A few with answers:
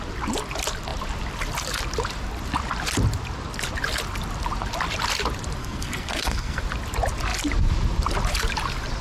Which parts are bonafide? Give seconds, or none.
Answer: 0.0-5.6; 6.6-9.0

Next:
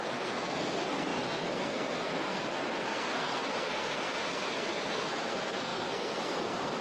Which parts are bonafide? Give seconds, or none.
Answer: none

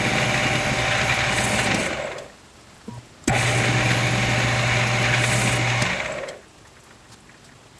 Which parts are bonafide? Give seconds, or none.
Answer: 0.0-7.8